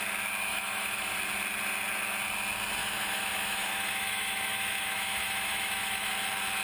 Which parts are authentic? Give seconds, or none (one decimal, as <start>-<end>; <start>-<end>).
0.0-0.5; 1.1-2.8; 6.1-6.6